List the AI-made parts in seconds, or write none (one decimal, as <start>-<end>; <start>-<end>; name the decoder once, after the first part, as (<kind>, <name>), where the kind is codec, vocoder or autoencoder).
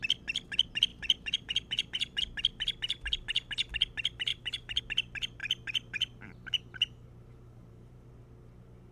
0.9-2.2 (vocoder, BigVGAN v2); 4.3-4.8; 5.4-8.1